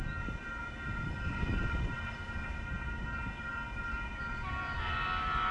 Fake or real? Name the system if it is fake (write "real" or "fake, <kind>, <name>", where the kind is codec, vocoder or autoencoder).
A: real